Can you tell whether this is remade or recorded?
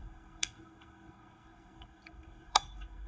remade